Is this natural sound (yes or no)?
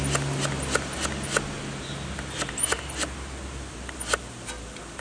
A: yes